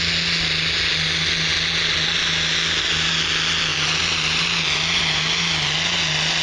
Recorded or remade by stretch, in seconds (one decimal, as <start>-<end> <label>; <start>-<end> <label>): 0.0-6.4 recorded